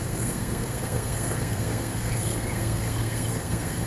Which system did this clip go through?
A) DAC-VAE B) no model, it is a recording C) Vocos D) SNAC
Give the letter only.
D